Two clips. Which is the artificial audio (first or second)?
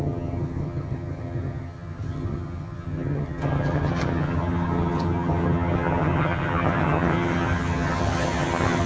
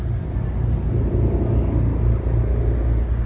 first